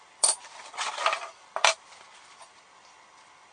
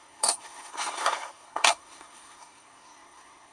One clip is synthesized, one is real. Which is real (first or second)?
first